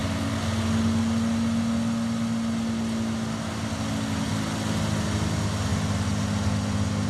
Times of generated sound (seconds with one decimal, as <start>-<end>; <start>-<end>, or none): none